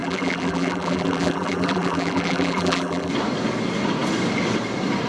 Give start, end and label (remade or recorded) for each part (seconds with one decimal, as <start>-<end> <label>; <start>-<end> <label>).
0.0-3.1 remade; 3.1-5.1 recorded